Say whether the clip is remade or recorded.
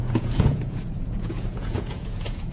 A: remade